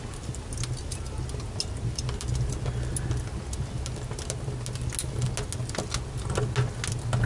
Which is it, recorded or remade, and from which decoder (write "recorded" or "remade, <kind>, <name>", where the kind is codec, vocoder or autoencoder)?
recorded